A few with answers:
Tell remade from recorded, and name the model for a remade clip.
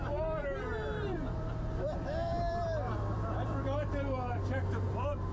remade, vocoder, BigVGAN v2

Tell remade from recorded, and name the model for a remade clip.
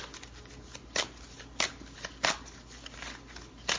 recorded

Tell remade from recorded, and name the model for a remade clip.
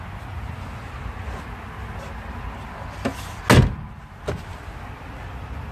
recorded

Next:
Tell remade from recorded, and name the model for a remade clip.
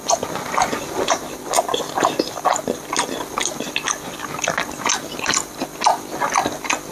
recorded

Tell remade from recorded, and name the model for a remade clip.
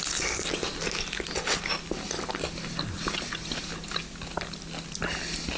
recorded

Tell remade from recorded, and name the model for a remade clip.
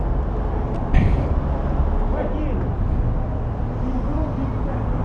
recorded